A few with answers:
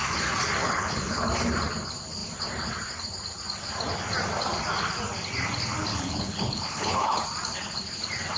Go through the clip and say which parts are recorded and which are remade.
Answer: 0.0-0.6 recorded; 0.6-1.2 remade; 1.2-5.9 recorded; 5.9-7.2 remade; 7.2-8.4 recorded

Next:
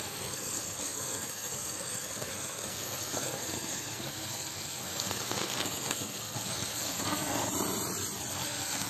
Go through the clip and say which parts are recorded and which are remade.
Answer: 0.0-7.4 remade; 7.4-8.3 recorded; 8.3-8.9 remade

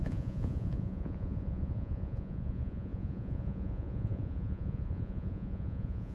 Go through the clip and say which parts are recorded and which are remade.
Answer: 0.0-6.1 remade